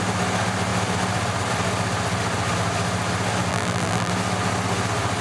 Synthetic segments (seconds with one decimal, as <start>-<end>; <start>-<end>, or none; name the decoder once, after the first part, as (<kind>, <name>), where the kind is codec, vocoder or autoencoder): 3.5-4.1 (vocoder, BigVGAN v2)